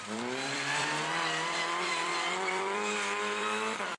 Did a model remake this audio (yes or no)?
yes